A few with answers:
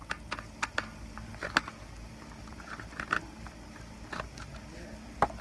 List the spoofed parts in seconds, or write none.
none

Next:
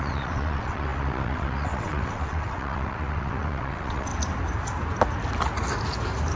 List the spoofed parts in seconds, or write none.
0.0-4.1

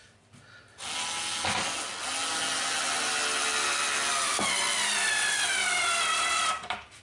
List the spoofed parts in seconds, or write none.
none

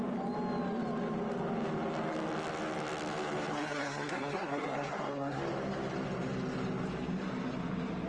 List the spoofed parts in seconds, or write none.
3.5-5.4

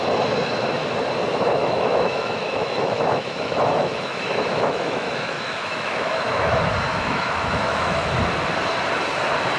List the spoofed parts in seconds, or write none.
1.6-6.5; 6.9-8.1

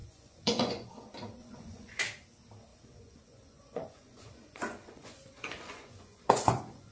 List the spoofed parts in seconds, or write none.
0.0-0.9; 1.4-2.0; 2.7-6.9

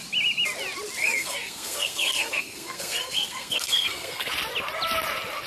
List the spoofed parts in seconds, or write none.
1.0-4.3

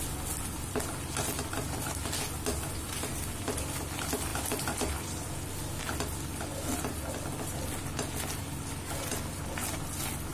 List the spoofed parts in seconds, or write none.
none